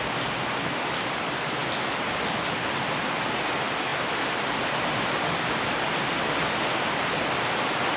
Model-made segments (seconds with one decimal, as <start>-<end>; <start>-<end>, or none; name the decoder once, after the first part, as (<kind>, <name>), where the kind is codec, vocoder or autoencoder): none